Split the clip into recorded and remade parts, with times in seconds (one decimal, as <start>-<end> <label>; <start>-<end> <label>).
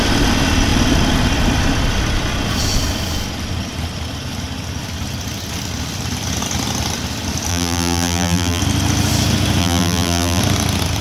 0.0-7.5 recorded; 7.5-8.6 remade; 8.6-9.6 recorded; 9.6-10.4 remade; 10.4-11.0 recorded